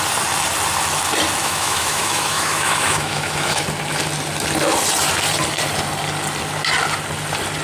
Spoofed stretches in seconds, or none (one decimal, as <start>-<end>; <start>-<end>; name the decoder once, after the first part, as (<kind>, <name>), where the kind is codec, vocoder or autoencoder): 1.4-3.6 (autoencoder, DAC-VAE)